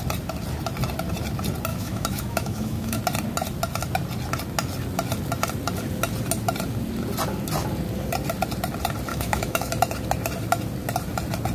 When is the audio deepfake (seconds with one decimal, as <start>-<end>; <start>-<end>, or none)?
1.7-3.0; 9.1-9.7